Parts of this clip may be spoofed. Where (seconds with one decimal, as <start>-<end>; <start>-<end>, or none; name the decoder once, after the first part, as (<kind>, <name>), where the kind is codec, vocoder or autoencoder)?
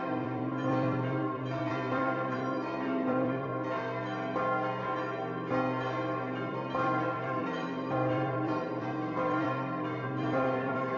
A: 0.0-3.5 (vocoder, BigVGAN v2); 6.5-11.0